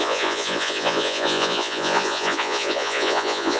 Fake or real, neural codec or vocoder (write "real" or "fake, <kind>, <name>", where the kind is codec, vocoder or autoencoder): fake, vocoder, Vocos